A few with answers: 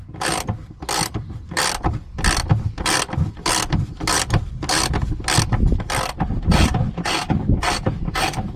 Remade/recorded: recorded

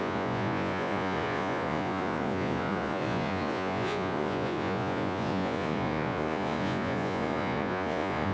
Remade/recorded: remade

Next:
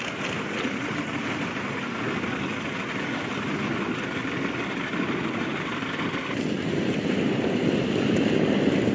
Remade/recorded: recorded